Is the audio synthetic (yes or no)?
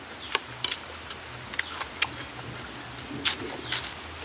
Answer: no